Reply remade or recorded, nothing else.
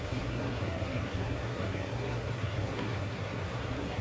remade